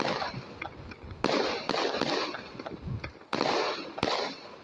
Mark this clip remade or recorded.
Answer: recorded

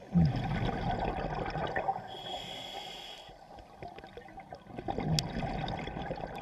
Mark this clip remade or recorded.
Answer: recorded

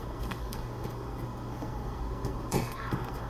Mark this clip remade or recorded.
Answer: remade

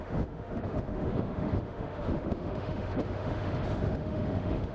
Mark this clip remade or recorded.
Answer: remade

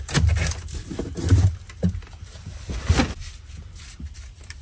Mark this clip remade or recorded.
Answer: recorded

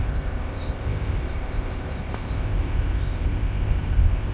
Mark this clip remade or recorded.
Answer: remade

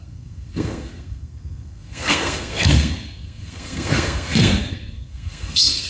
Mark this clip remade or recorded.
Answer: remade